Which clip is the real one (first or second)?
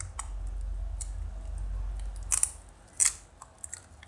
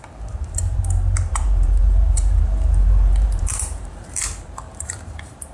first